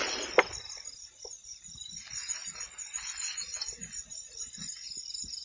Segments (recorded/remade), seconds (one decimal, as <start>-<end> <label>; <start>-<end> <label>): 0.0-5.4 recorded